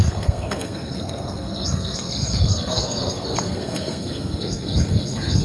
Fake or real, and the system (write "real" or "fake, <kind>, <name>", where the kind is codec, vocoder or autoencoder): fake, codec, SNAC